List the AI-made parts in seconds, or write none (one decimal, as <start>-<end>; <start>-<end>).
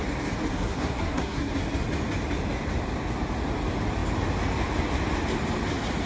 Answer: 0.5-1.5